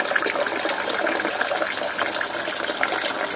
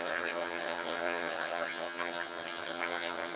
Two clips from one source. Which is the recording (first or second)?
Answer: first